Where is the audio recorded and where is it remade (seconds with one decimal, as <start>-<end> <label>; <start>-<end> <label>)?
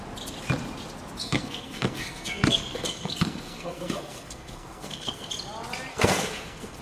0.0-1.2 recorded; 1.2-5.3 remade; 5.3-5.9 recorded; 5.9-6.8 remade